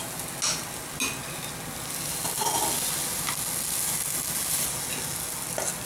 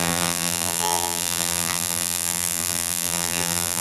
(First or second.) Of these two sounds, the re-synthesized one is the second